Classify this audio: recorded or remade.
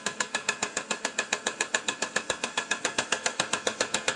remade